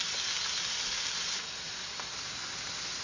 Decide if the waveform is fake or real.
real